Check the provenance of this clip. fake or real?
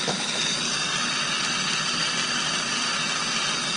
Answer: real